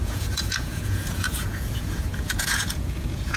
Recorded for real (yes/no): no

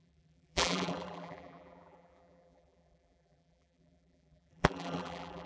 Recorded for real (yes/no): no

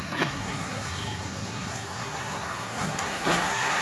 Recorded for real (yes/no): no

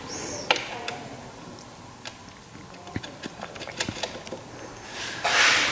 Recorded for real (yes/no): yes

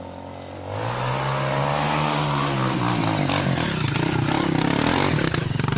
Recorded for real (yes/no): yes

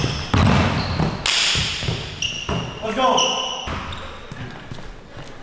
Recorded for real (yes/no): yes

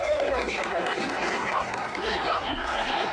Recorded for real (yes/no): no